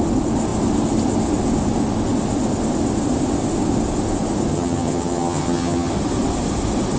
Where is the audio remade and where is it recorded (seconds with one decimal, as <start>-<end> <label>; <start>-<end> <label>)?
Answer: 0.0-4.5 recorded; 4.5-5.9 remade; 5.9-7.0 recorded